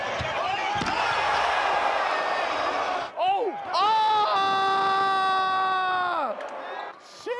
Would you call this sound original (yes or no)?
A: yes